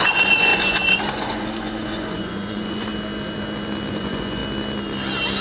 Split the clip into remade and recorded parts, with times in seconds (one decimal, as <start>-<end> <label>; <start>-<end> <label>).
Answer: 0.0-2.9 remade; 2.9-3.9 recorded; 3.9-4.4 remade; 4.4-5.4 recorded